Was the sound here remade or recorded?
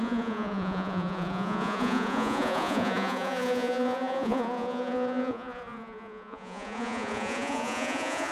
remade